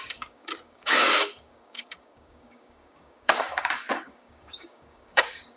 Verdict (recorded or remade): remade